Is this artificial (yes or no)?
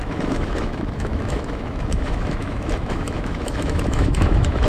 yes